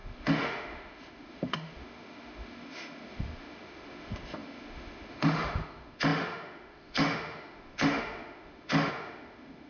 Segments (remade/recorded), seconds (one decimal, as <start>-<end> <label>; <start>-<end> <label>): 0.0-9.7 remade